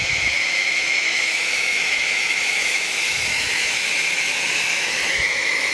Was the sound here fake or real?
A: fake